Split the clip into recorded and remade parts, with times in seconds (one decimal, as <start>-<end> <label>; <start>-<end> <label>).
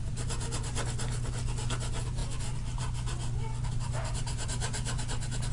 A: 0.0-5.5 recorded